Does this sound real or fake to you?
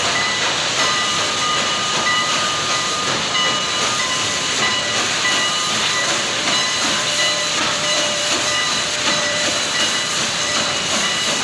fake